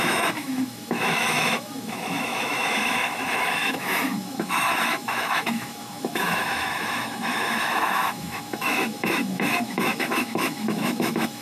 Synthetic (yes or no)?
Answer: yes